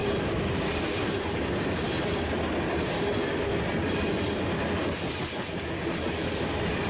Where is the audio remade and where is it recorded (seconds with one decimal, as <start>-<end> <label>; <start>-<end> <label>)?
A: 0.0-3.5 recorded; 3.5-4.5 remade; 4.5-6.9 recorded

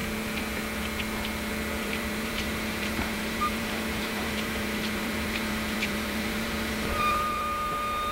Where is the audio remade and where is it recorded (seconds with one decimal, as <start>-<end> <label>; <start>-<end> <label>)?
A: 0.0-1.8 recorded; 1.8-8.1 remade

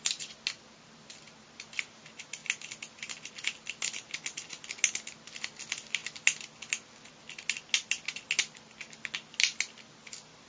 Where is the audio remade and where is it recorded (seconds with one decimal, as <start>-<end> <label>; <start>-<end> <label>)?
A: 0.0-10.5 recorded

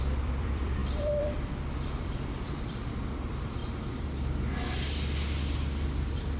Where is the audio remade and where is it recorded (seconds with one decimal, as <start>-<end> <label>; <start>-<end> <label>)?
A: 0.0-3.6 remade; 3.6-5.4 recorded; 5.4-6.4 remade

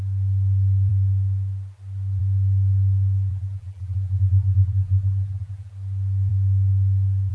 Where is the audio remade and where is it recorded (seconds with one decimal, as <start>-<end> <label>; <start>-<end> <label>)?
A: 0.0-3.3 recorded; 3.3-5.7 remade; 5.7-7.3 recorded

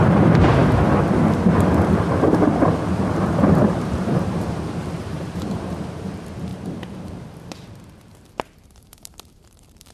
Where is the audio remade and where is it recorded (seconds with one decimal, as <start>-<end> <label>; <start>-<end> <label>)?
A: 0.0-3.4 recorded; 3.4-5.7 remade; 5.7-6.5 recorded; 6.5-9.9 remade

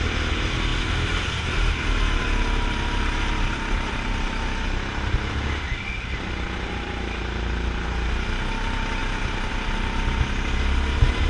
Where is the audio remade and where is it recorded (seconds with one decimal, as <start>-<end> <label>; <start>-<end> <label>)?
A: 0.0-11.3 recorded